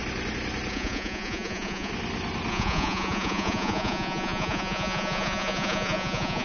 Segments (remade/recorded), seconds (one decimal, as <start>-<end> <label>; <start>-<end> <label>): 0.0-0.7 recorded; 0.7-1.9 remade; 1.9-2.5 recorded; 2.5-6.4 remade